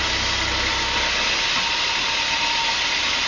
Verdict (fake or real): real